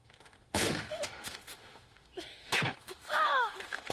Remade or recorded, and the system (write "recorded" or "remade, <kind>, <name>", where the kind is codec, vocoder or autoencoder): remade, autoencoder, DAC-VAE